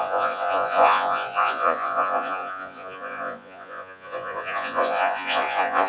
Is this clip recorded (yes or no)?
no